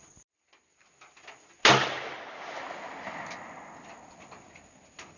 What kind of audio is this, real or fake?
real